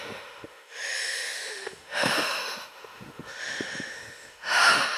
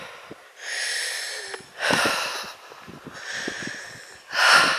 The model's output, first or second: first